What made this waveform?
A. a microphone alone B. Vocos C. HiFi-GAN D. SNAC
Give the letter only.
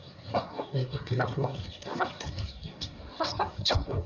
D